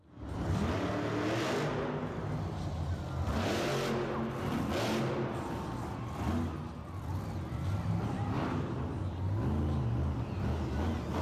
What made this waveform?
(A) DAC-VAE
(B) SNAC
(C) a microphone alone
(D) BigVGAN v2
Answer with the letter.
C